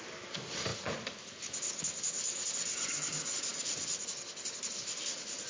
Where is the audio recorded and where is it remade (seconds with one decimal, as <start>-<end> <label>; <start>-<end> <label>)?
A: 0.0-5.5 recorded